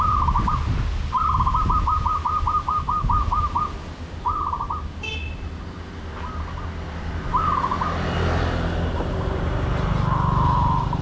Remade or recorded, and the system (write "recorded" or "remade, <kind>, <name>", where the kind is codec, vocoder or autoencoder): recorded